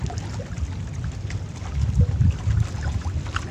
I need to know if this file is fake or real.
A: real